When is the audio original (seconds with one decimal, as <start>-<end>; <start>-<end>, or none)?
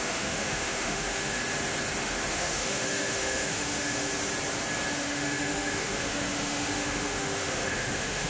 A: 1.4-2.3; 4.1-4.9